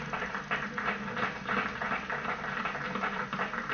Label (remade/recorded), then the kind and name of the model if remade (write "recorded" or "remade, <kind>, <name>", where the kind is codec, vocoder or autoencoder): recorded